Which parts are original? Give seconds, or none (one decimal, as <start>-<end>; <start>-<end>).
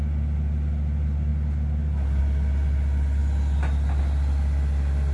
0.0-5.1